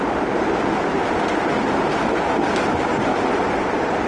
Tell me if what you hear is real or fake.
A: real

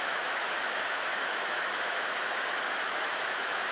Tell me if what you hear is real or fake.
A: fake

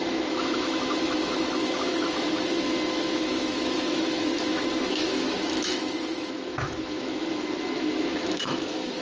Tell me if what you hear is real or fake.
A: fake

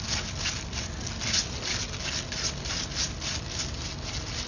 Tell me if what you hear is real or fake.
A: real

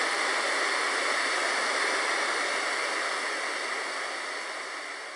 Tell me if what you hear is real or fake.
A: real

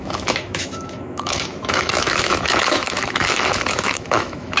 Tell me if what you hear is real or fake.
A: fake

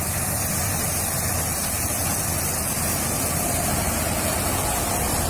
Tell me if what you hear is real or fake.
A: real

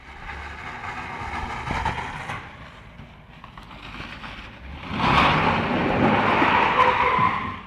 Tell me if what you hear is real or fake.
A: real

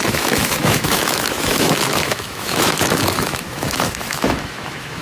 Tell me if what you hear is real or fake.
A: fake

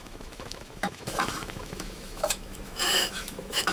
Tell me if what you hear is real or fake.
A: fake